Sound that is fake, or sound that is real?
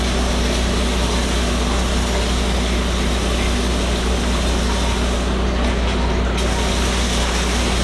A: real